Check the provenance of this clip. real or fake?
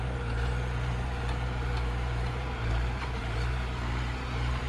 fake